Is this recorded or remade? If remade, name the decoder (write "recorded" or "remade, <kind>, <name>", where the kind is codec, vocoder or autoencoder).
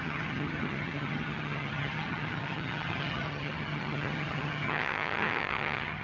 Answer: remade, vocoder, HiFi-GAN